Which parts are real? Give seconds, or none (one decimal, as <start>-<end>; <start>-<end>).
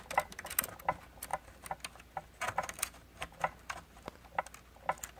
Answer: 0.0-5.2